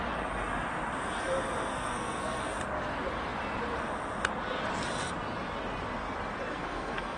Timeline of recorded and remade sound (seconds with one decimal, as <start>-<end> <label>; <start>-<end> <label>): 0.0-1.7 recorded; 1.7-2.4 remade; 2.4-6.5 recorded; 6.5-7.2 remade